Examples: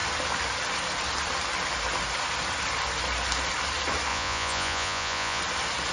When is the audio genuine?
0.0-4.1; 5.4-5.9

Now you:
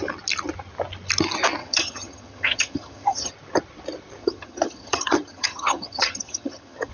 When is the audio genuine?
0.0-1.6; 3.3-4.2

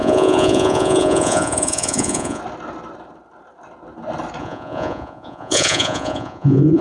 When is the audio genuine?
2.4-4.4

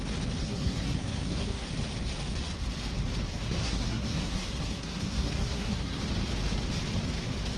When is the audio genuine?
0.0-0.4; 1.7-3.3; 6.0-7.6

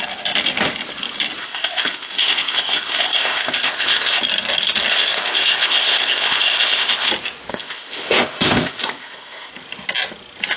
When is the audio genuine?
0.0-1.4; 4.2-4.9; 7.1-7.5; 9.5-10.6